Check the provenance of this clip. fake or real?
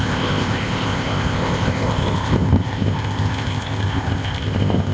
fake